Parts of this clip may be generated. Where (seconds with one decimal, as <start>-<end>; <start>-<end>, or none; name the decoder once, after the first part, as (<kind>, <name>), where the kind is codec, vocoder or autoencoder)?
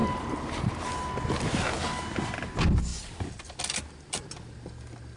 0.0-0.8 (vocoder, BigVGAN v2)